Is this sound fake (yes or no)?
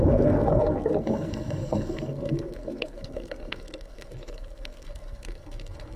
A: yes